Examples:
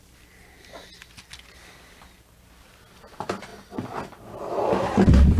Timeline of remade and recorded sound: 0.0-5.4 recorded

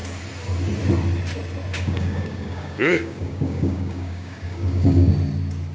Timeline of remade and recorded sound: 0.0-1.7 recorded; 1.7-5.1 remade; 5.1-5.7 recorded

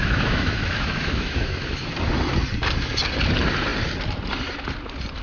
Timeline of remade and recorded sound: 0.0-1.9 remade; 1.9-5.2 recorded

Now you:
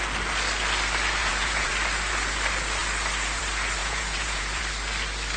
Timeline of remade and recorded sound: 0.0-1.2 recorded; 1.2-1.7 remade; 1.7-3.8 recorded; 3.8-4.6 remade; 4.6-5.4 recorded

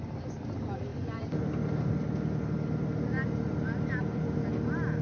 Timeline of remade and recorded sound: 0.0-5.0 recorded